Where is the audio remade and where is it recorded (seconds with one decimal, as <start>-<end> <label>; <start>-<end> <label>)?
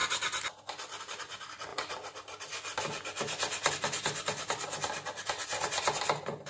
0.0-6.5 recorded